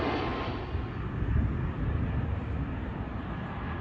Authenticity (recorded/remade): recorded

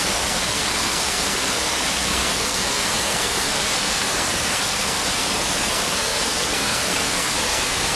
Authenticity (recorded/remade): remade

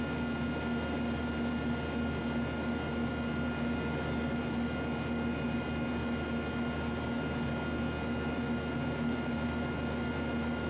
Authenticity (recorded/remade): recorded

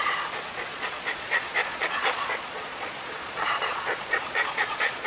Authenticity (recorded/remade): remade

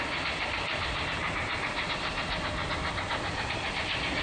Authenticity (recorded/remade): recorded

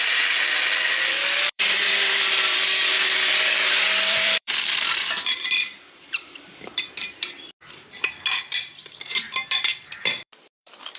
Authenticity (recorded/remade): remade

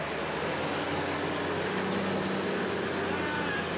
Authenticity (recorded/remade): recorded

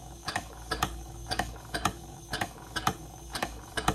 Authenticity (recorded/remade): remade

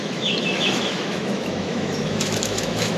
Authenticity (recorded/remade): remade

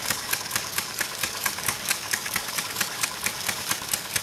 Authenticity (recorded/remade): remade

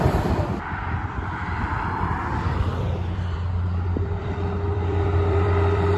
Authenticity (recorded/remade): remade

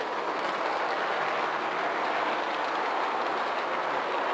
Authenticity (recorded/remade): recorded